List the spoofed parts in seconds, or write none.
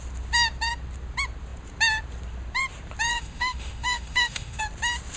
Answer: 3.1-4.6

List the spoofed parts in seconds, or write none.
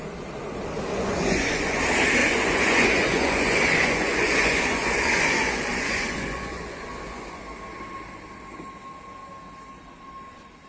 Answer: 0.9-1.8; 2.2-7.4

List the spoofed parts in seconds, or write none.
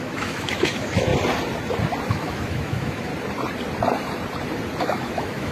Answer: 0.0-1.1; 2.1-3.1; 4.8-5.5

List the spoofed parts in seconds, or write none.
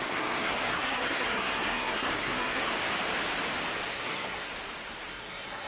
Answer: 0.0-2.7; 3.9-4.5; 5.1-5.7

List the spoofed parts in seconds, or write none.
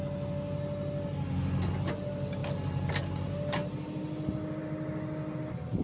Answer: none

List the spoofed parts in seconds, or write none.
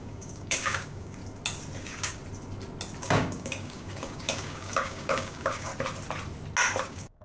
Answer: 0.0-1.2; 1.8-2.2; 3.0-5.7; 6.8-7.2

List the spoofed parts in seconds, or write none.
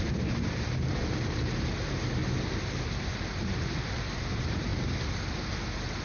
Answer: 0.0-2.2; 3.5-4.7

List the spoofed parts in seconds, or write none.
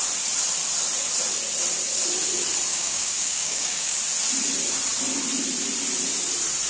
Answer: 2.7-4.0